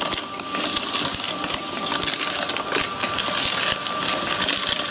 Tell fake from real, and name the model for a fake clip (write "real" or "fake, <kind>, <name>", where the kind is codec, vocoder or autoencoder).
real